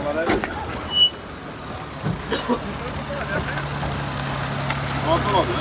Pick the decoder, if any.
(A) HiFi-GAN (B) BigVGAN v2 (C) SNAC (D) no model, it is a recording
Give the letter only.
D